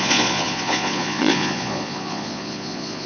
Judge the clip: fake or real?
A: fake